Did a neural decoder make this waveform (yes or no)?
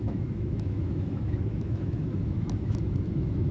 yes